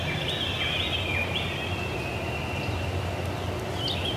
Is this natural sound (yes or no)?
yes